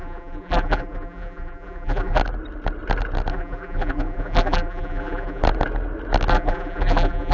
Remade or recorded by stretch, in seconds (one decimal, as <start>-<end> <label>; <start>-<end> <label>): 0.0-2.2 remade; 2.2-3.3 recorded; 3.3-5.4 remade; 5.4-6.3 recorded; 6.3-7.3 remade